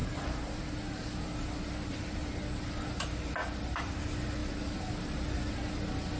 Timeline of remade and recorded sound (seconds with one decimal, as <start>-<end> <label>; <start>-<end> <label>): 0.0-1.2 remade; 1.2-4.4 recorded; 4.4-4.9 remade; 4.9-6.2 recorded

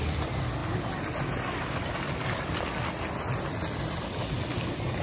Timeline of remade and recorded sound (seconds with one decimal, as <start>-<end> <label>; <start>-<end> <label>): 0.0-5.0 recorded

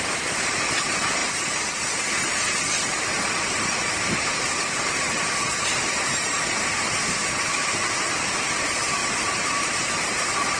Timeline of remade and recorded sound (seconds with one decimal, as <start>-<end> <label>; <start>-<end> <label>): 0.0-7.2 remade; 7.2-8.5 recorded; 8.5-10.6 remade

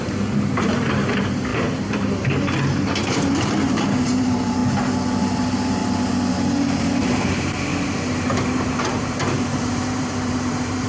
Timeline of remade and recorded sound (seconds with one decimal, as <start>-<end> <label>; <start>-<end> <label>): 0.0-4.6 remade; 4.6-5.2 recorded; 5.2-5.8 remade; 5.8-6.3 recorded; 6.3-7.7 remade; 7.7-8.2 recorded; 8.2-10.9 remade